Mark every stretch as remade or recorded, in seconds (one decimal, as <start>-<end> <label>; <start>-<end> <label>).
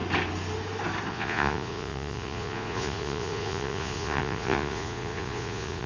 0.0-1.1 recorded; 1.1-5.9 remade